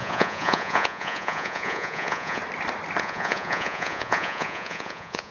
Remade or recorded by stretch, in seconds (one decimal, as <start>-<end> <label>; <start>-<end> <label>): 0.0-2.4 remade; 2.4-3.0 recorded; 3.0-5.3 remade